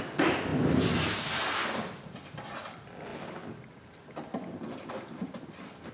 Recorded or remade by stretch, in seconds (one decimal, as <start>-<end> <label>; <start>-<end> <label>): 0.0-5.9 recorded